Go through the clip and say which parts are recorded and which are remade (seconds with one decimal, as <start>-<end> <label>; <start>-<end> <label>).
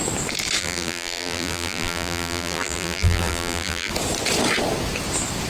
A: 0.0-0.6 recorded; 0.6-3.9 remade; 3.9-5.5 recorded